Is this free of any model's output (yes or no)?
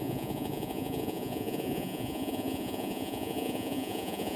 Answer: no